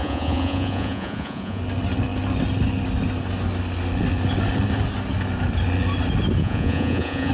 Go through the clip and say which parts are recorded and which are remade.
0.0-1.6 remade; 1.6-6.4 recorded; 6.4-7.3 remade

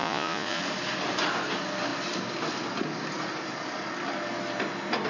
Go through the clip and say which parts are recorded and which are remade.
0.0-0.6 remade; 0.6-5.1 recorded

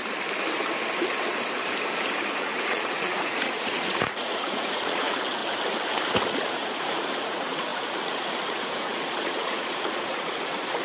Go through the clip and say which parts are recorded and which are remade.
0.0-2.4 recorded; 2.4-5.4 remade; 5.4-6.1 recorded; 6.1-10.8 remade

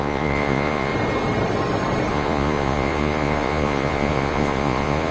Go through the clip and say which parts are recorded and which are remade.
0.0-0.9 remade; 0.9-2.1 recorded; 2.1-5.1 remade

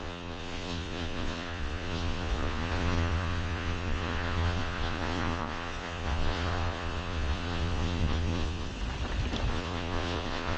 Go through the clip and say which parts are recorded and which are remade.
0.0-8.7 remade; 8.7-9.5 recorded; 9.5-10.6 remade

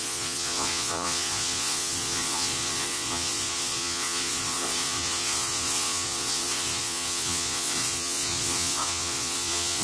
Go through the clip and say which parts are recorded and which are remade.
0.0-9.8 remade

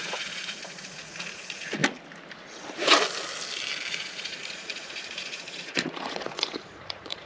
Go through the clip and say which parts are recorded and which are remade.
0.0-1.8 remade; 1.8-3.9 recorded; 3.9-7.3 remade

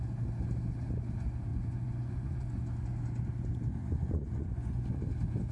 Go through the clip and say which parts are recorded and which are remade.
0.0-1.5 recorded; 1.5-2.6 remade; 2.6-3.8 recorded; 3.8-5.0 remade; 5.0-5.5 recorded